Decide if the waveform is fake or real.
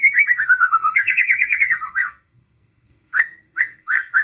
fake